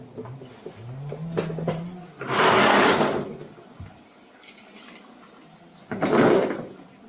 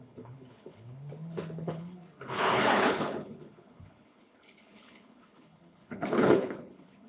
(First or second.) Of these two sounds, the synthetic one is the second